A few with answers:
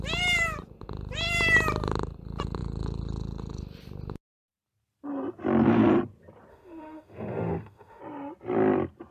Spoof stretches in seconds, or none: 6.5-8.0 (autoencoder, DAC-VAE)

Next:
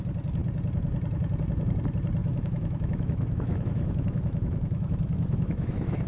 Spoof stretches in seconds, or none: 2.2-6.1 (autoencoder, DAC-VAE)

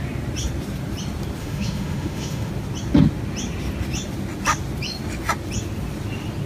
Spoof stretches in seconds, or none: 1.4-2.5 (autoencoder, DAC-VAE)

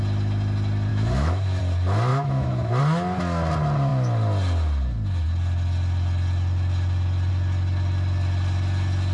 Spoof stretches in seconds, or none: 0.9-1.6 (autoencoder, DAC-VAE); 2.1-2.8